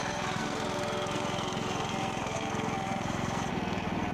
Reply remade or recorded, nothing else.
remade